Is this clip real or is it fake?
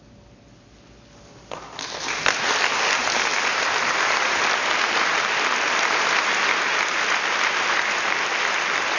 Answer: real